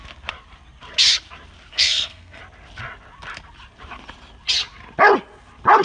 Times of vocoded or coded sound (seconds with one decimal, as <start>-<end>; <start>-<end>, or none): 1.7-2.4